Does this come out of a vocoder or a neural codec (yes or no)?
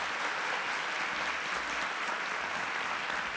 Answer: no